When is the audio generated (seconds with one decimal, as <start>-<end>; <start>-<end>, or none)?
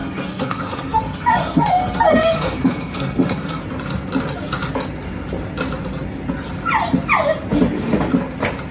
0.0-3.6